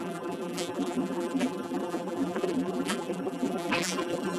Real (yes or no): no